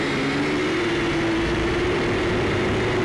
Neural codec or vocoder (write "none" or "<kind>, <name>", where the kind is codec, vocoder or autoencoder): vocoder, BigVGAN v2